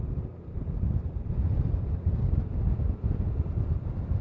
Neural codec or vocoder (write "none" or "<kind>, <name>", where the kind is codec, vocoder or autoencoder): none